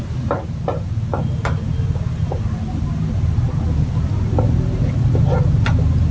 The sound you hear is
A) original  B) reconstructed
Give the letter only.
A